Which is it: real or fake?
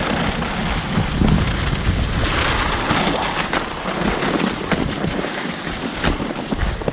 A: real